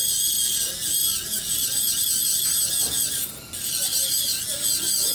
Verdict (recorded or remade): recorded